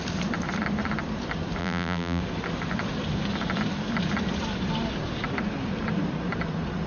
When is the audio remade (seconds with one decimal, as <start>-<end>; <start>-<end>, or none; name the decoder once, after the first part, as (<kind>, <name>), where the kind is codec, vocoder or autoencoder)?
1.6-2.2 (vocoder, BigVGAN v2)